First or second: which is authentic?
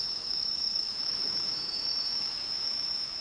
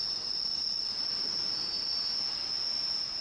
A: second